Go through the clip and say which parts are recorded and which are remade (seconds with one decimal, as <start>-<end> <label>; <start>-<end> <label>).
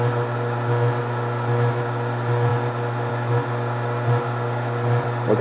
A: 0.0-5.4 recorded